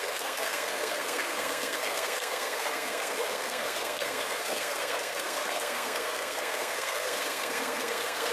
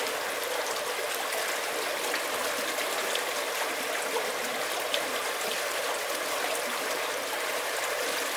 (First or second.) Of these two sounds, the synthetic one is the first